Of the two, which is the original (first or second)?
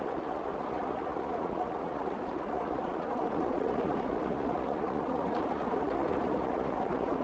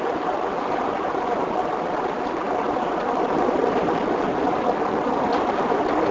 second